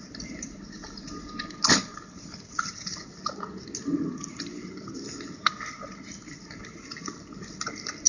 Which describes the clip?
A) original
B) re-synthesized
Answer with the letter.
A